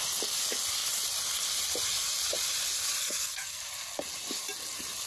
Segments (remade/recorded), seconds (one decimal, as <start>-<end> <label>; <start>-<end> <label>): 0.0-3.0 recorded; 3.0-3.6 remade; 3.6-5.1 recorded